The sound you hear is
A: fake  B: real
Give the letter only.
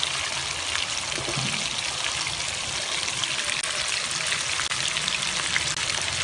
B